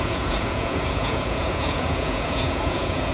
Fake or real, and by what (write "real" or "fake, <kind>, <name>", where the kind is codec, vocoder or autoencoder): fake, vocoder, Vocos